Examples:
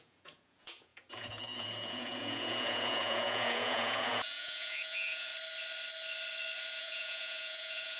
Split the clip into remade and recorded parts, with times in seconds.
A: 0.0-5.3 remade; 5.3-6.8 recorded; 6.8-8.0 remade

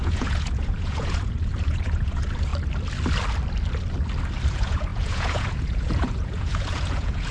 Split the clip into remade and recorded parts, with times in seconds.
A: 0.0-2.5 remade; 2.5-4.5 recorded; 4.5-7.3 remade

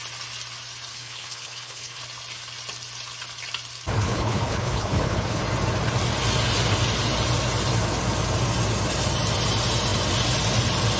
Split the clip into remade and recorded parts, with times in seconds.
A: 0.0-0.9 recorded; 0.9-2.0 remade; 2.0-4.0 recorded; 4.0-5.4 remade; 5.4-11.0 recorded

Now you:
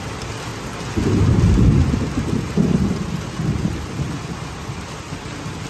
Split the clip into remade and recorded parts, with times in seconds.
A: 0.0-5.7 recorded